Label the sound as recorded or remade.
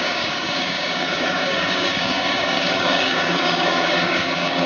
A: remade